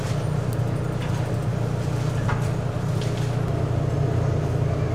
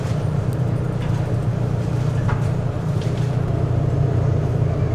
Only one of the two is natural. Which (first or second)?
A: first